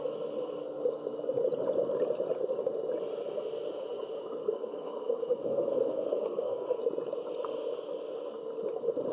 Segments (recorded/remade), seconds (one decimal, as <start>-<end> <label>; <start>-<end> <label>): 0.0-4.4 recorded; 4.4-6.8 remade; 6.8-9.1 recorded